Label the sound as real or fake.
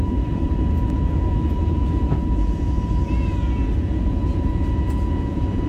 fake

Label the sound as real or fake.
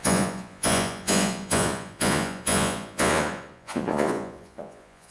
fake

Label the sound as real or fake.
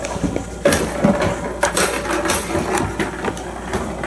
real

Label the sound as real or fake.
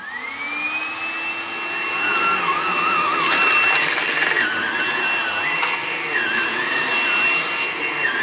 real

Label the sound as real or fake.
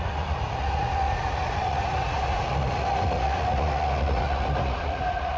fake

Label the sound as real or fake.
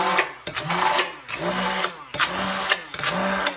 real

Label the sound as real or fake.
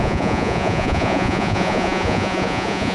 fake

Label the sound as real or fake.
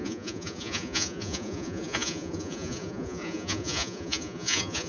fake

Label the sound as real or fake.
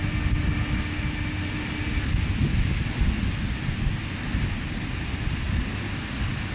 real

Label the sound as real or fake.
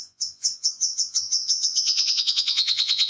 fake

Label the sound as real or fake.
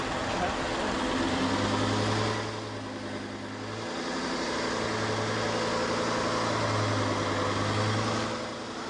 real